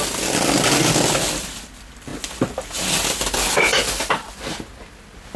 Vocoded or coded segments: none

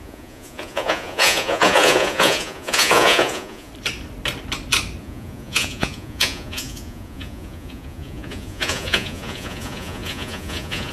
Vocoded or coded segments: 0.0-3.7 (vocoder, Vocos); 5.0-10.9

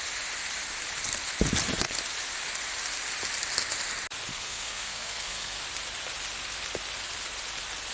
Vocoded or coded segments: 4.3-5.6 (codec, SNAC)

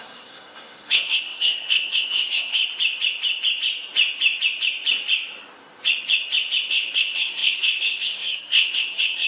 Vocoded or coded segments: 0.0-2.6 (codec, SNAC); 6.7-9.3

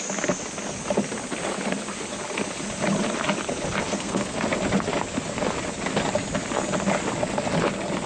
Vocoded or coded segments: 3.9-4.4 (codec, SNAC)

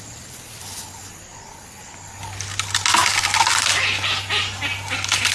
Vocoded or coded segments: none

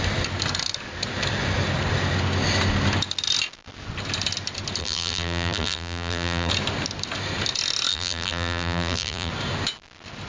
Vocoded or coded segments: 4.8-6.5 (vocoder, BigVGAN v2); 7.9-9.3

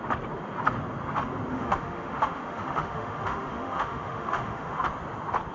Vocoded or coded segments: 1.5-4.8 (autoencoder, DAC-VAE)